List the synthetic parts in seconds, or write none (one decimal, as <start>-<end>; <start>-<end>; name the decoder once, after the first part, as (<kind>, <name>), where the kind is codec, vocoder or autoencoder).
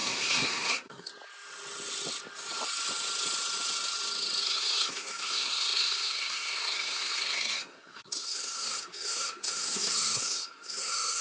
0.0-1.1 (codec, SNAC); 4.4-11.2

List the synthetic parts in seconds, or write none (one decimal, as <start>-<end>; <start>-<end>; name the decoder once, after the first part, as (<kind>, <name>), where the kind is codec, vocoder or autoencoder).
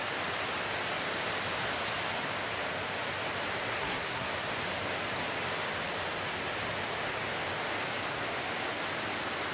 3.7-4.3 (codec, SNAC)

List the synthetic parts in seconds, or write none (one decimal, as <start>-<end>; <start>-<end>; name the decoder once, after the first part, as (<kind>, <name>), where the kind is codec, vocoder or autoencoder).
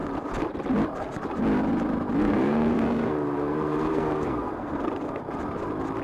2.2-5.2 (codec, SNAC)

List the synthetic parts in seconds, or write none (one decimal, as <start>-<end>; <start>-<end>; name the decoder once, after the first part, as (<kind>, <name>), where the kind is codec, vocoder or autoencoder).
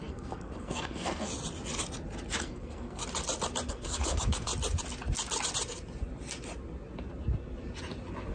0.0-1.3 (codec, SNAC); 2.4-3.0; 3.7-4.5